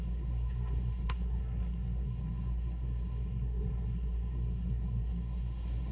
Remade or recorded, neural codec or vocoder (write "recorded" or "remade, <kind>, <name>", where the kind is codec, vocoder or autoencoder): remade, codec, SNAC